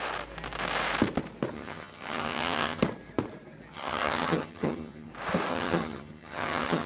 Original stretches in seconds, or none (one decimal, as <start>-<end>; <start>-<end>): 0.0-1.5; 2.8-3.7; 5.1-5.5